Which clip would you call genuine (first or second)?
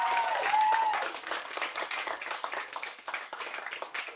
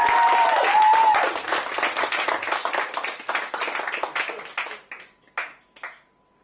second